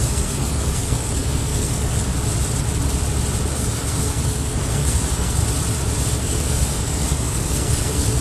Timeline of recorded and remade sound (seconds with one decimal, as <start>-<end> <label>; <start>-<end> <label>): 0.0-2.1 remade; 2.1-3.5 recorded; 3.5-5.4 remade; 5.4-6.2 recorded; 6.2-8.2 remade